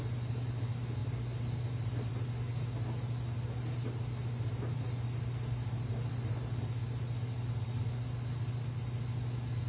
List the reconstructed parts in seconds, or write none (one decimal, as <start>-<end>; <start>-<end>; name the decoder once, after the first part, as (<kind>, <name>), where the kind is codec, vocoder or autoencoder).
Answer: none

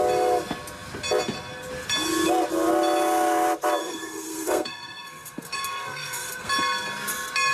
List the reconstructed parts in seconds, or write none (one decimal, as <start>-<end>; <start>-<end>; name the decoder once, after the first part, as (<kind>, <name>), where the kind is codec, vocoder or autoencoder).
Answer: 3.8-6.5 (codec, SNAC)